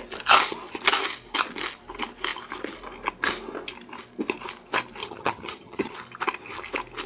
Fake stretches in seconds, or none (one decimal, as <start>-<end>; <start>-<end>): 5.0-5.9